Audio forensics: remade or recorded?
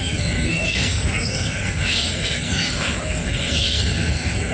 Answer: remade